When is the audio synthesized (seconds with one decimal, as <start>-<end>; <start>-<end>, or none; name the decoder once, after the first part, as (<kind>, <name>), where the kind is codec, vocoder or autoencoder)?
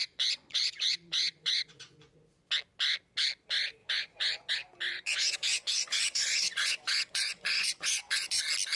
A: 0.0-2.1 (vocoder, Vocos); 3.8-4.5; 4.9-8.4